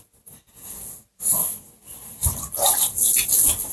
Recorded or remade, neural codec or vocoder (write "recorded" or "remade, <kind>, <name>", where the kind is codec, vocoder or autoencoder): recorded